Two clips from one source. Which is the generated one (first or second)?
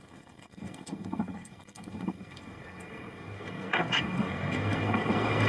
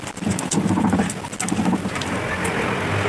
first